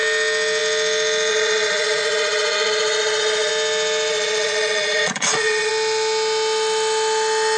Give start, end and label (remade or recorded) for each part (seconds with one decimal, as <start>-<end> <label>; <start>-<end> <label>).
0.0-1.3 recorded; 1.3-3.5 remade; 3.5-4.1 recorded; 4.1-5.7 remade; 5.7-7.6 recorded